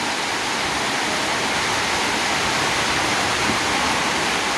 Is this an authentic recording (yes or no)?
yes